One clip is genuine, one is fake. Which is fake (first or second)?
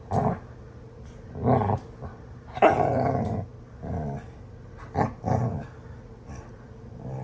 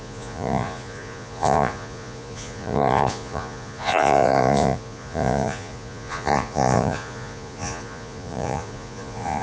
second